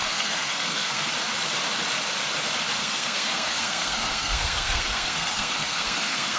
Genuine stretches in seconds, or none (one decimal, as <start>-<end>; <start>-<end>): 1.1-2.8